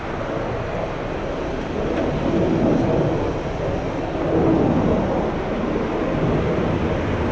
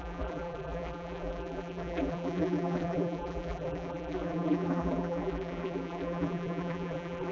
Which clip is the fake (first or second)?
second